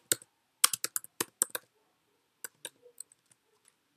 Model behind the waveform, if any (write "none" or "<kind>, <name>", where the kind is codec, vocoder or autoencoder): none